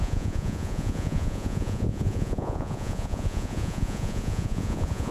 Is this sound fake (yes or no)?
yes